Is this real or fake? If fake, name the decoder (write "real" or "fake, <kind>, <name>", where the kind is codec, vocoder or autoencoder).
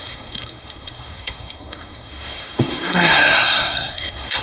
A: fake, codec, SNAC